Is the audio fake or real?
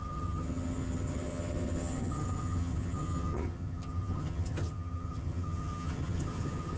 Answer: fake